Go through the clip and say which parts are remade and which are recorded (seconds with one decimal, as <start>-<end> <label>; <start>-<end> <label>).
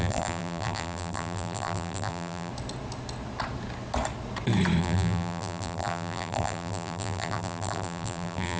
0.0-2.5 remade; 2.5-4.8 recorded; 4.8-8.6 remade